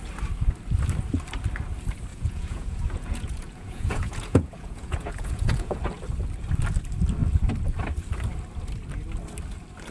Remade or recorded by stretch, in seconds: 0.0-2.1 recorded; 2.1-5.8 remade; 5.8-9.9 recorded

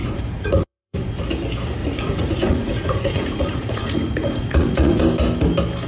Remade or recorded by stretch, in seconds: 0.0-1.2 remade; 1.2-1.8 recorded; 1.8-5.0 remade; 5.0-5.9 recorded

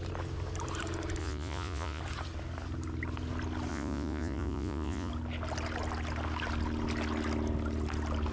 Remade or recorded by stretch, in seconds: 0.0-1.2 recorded; 1.2-2.0 remade; 2.0-3.7 recorded; 3.7-5.1 remade; 5.1-8.3 recorded

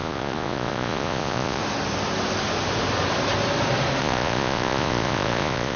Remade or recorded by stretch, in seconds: 0.0-1.6 remade; 1.6-4.0 recorded; 4.0-5.8 remade

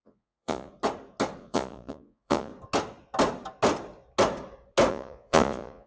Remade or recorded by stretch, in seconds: 0.0-0.7 remade; 0.7-1.4 recorded; 1.4-2.5 remade; 2.5-4.9 recorded; 4.9-5.9 remade